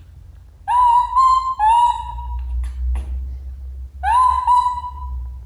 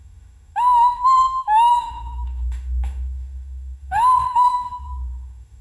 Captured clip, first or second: first